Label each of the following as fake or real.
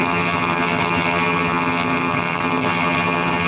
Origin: fake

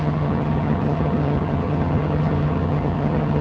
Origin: fake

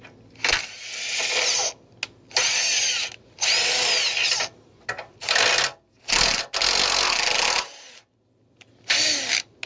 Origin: real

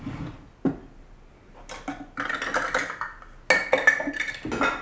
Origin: real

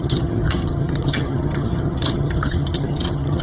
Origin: fake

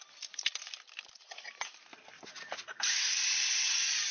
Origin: real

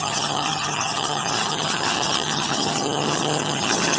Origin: fake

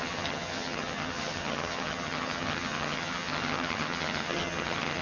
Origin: fake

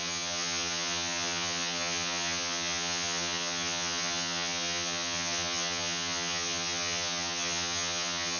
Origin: fake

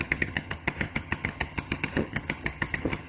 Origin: fake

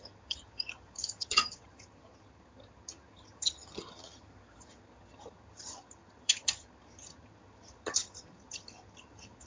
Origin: fake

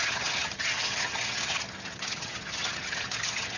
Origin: fake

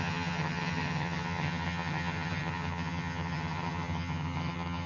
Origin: fake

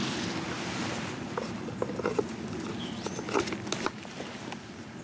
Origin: real